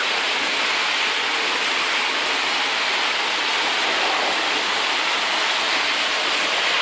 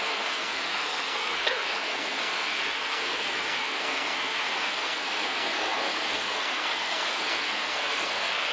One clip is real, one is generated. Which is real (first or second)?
first